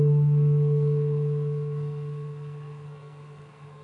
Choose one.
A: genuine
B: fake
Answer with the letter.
B